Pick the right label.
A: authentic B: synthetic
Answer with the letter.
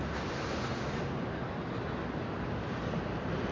A